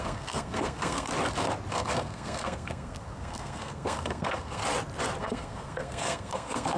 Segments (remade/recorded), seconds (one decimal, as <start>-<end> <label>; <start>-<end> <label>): 0.0-1.1 remade; 1.1-1.7 recorded; 1.7-4.6 remade; 4.6-5.2 recorded; 5.2-6.8 remade